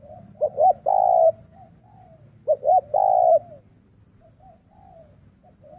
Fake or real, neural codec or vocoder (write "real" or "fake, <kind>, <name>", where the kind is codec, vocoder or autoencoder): real